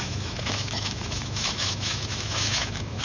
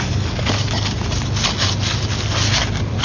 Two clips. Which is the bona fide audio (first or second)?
second